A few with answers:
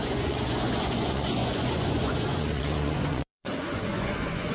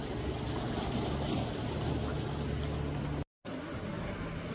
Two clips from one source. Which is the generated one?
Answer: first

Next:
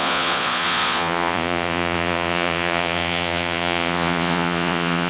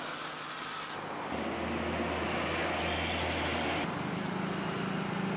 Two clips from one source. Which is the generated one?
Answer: first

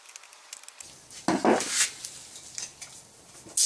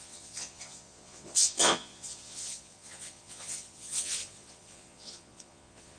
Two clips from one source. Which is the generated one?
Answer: second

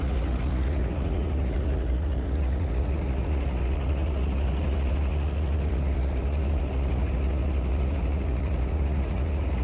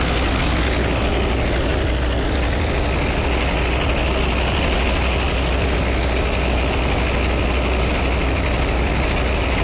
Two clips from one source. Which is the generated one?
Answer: first